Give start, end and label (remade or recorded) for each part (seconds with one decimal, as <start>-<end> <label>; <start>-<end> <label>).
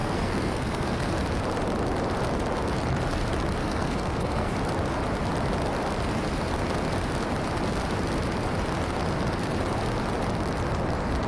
0.0-1.2 remade; 1.2-3.6 recorded; 3.6-4.5 remade; 4.5-11.3 recorded